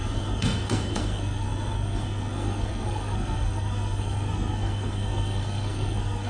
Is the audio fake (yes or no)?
yes